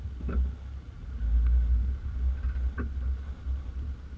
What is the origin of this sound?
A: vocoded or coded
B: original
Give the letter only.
B